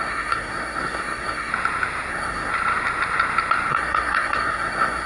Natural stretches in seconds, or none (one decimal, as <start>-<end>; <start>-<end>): 1.5-2.1; 2.5-3.7